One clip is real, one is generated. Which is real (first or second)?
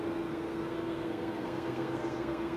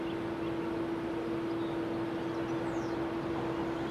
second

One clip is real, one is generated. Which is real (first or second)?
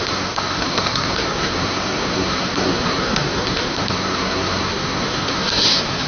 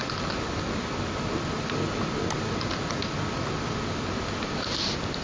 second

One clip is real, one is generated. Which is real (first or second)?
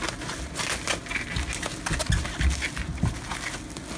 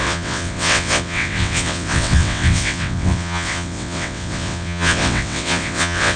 first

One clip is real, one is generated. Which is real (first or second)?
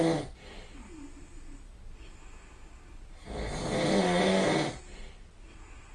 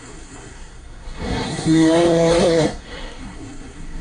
first